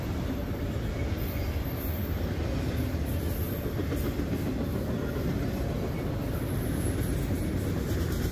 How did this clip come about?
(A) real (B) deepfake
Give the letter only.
A